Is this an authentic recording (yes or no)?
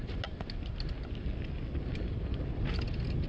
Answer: yes